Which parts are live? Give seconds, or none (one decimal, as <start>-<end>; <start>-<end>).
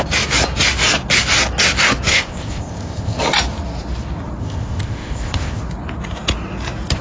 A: 0.0-2.1; 3.2-4.4; 5.6-7.0